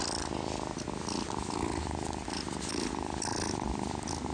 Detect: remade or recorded recorded